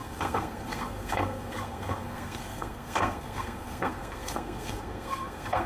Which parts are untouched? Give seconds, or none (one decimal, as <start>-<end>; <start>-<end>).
none